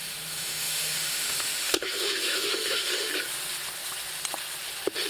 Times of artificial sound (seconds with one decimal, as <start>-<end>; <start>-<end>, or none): 0.0-3.1